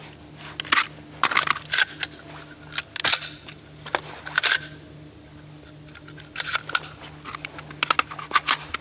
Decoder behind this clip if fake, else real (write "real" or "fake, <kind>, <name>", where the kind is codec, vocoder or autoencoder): real